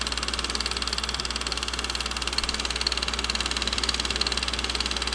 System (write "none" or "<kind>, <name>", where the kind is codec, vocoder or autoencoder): none